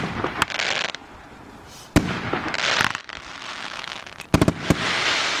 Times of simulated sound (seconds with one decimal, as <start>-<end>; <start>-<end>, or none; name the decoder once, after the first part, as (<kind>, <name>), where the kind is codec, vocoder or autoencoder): 2.9-4.0 (autoencoder, DAC-VAE)